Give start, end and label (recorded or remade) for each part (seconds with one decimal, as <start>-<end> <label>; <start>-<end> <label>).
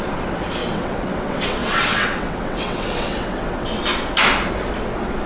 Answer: 0.0-0.6 recorded; 0.6-3.8 remade; 3.8-5.3 recorded